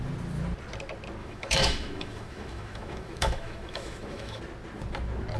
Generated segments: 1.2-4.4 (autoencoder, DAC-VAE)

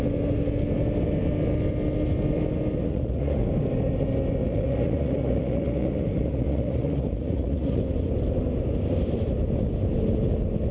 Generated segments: 2.8-3.4 (vocoder, Vocos); 4.4-7.8

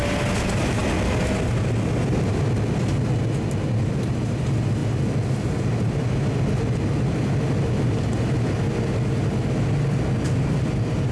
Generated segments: none

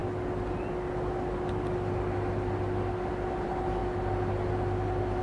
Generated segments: 3.1-3.8 (vocoder, BigVGAN v2)

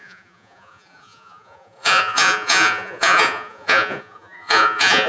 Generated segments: 0.0-5.1 (vocoder, Vocos)

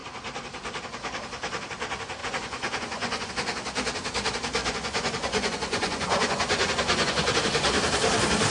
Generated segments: 2.2-3.3 (vocoder, Vocos); 4.6-7.3